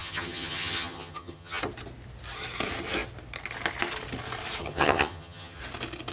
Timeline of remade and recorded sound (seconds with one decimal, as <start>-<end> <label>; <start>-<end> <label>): 0.0-1.6 remade; 1.6-4.6 recorded; 4.6-5.6 remade; 5.6-6.1 recorded

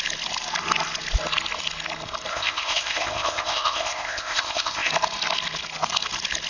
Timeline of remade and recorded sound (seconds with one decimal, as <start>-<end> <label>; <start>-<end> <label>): 0.0-2.3 recorded; 2.3-4.9 remade; 4.9-6.5 recorded

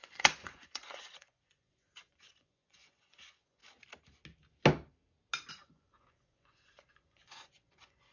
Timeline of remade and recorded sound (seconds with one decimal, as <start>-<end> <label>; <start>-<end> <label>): 0.0-3.6 remade; 3.6-5.5 recorded; 5.5-8.1 remade

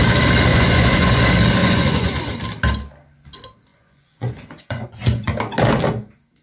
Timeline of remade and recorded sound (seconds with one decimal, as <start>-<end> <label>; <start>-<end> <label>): 0.0-0.5 recorded; 0.5-1.2 remade; 1.2-1.6 recorded; 1.6-2.3 remade; 2.3-3.7 recorded; 3.7-5.3 remade; 5.3-6.4 recorded

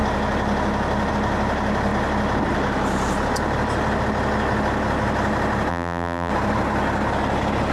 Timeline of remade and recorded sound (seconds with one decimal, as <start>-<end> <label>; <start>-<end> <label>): 0.0-5.7 recorded; 5.7-6.3 remade; 6.3-7.7 recorded

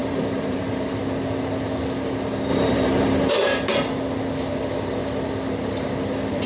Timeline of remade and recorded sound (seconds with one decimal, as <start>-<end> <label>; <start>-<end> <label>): 0.0-1.0 remade; 1.0-2.5 recorded; 2.5-3.3 remade; 3.3-6.5 recorded

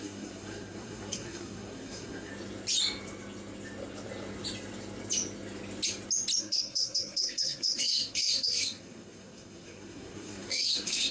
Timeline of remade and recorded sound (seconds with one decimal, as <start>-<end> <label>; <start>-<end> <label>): 0.0-2.3 remade; 2.3-6.4 recorded; 6.4-11.1 remade